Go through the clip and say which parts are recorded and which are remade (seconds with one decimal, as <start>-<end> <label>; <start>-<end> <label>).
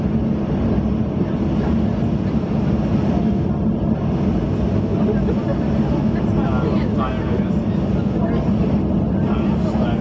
0.0-10.0 recorded